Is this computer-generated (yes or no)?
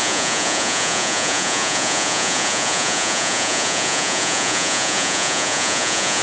yes